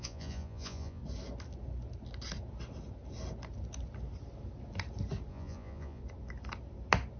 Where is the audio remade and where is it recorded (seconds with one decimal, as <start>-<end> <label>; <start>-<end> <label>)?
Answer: 0.0-1.0 remade; 1.0-5.3 recorded; 5.3-6.0 remade; 6.0-7.2 recorded